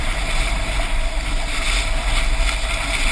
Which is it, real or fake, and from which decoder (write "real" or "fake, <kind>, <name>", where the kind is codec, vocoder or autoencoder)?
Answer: real